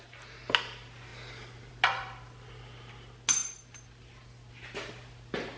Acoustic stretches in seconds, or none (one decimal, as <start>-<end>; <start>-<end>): 0.0-5.6